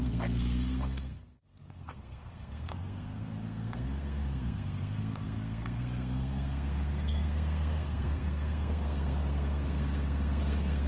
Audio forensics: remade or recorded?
remade